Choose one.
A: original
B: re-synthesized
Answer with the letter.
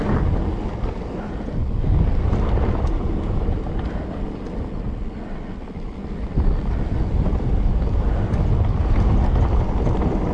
A